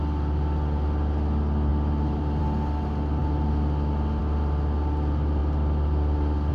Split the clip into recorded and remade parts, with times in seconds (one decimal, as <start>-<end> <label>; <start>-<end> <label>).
0.0-1.7 recorded; 1.7-2.4 remade; 2.4-5.4 recorded; 5.4-6.5 remade

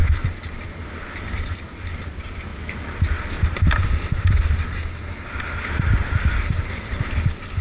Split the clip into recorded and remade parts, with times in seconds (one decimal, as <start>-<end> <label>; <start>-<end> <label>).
0.0-6.4 recorded; 6.4-7.0 remade; 7.0-7.6 recorded

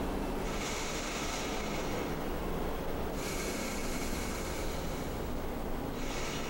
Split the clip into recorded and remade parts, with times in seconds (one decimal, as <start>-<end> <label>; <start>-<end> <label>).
0.0-0.5 recorded; 0.5-1.2 remade; 1.2-6.5 recorded

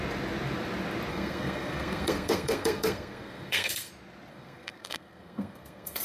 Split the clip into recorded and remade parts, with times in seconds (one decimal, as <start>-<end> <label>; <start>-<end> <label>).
0.0-1.1 recorded; 1.1-3.9 remade; 3.9-4.3 recorded; 4.3-6.0 remade